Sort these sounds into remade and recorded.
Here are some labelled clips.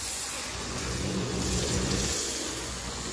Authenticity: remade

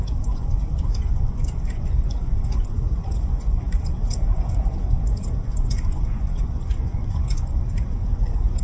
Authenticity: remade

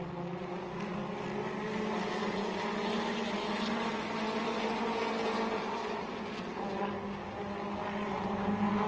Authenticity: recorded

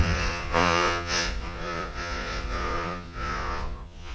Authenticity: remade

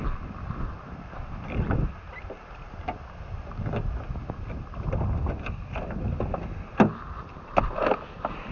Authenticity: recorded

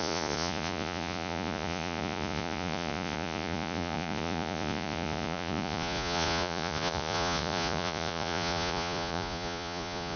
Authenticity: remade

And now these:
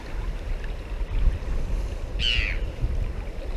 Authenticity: recorded